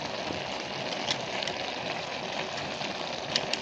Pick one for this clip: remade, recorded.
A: recorded